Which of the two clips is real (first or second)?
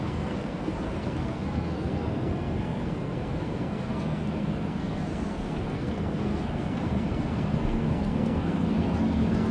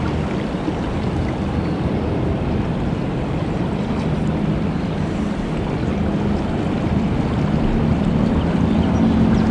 second